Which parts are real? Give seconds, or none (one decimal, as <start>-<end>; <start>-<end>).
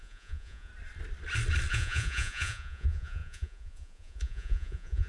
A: 0.7-1.7